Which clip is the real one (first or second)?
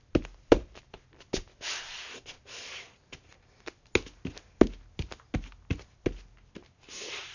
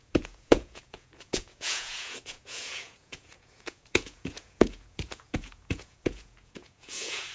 first